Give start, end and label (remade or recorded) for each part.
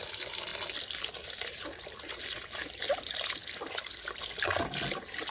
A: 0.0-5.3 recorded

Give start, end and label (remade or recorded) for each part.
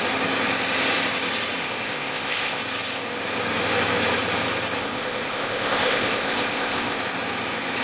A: 0.0-1.6 recorded; 1.6-2.6 remade; 2.6-4.8 recorded; 4.8-7.0 remade; 7.0-7.8 recorded